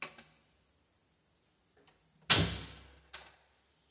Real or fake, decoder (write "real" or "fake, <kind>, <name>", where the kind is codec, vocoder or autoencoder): real